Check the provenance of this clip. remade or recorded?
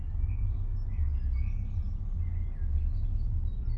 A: recorded